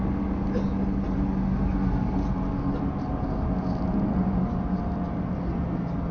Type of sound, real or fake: real